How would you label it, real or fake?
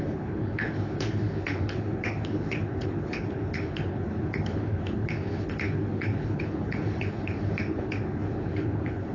fake